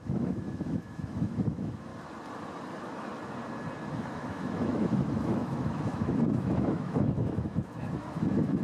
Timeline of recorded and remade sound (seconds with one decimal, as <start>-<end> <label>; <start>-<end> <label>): 0.0-1.9 remade; 1.9-3.9 recorded; 3.9-8.6 remade